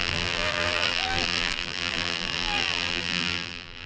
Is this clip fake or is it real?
fake